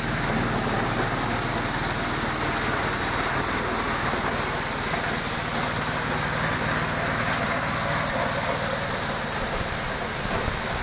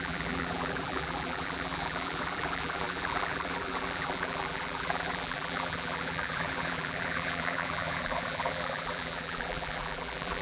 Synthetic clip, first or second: second